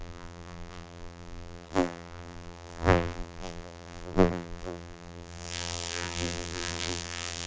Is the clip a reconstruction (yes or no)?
yes